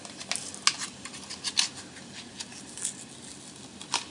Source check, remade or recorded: recorded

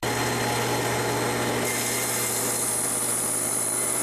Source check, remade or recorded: recorded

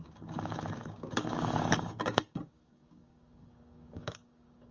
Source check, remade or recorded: remade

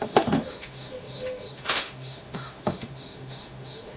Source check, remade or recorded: remade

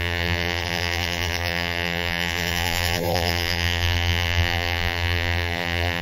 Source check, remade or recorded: remade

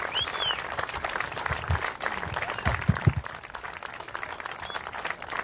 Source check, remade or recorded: recorded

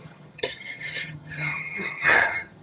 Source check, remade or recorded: remade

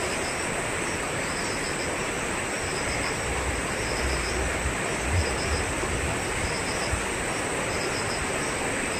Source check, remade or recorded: recorded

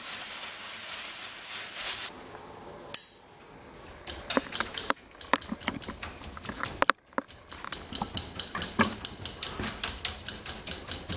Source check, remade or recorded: recorded